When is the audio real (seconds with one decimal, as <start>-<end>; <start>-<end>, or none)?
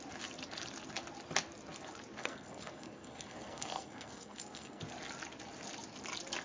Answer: 0.0-2.2; 4.8-6.4